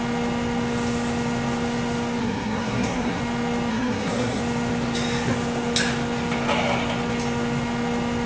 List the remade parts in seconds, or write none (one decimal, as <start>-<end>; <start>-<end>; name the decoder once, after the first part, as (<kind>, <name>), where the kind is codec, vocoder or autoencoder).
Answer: 2.2-3.2 (codec, SNAC); 3.7-4.4